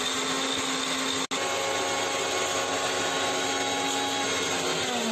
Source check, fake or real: real